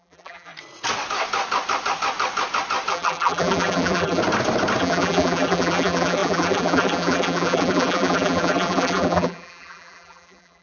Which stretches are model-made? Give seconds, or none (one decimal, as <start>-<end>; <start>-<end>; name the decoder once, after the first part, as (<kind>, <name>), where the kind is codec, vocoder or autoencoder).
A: 0.0-0.5 (vocoder, BigVGAN v2); 2.9-4.2; 4.8-10.6